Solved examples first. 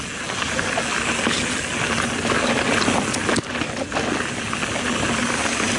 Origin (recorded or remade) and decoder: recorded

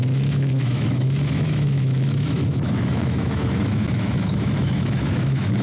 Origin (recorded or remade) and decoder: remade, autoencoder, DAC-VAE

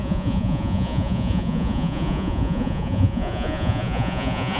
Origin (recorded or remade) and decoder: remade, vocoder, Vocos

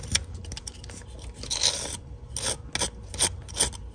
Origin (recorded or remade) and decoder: recorded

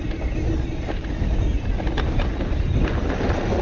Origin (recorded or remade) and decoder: recorded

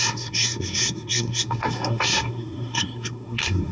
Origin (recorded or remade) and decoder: remade, codec, SNAC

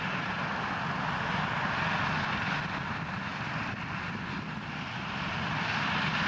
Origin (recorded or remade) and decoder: recorded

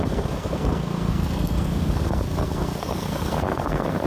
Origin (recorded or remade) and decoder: remade, codec, SNAC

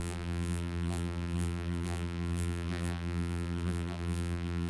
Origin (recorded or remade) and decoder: remade, vocoder, BigVGAN v2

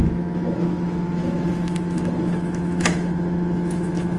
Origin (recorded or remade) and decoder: remade, autoencoder, DAC-VAE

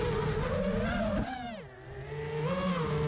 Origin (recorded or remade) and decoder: recorded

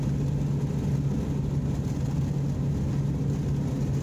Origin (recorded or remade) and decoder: recorded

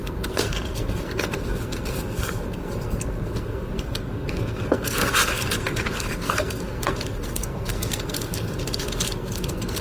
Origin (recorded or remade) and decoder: remade, codec, SNAC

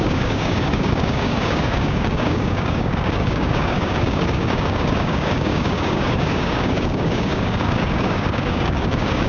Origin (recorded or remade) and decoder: remade, codec, DAC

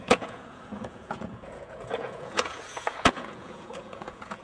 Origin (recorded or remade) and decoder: remade, vocoder, Vocos